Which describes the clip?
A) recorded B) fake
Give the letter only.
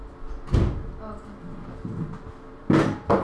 A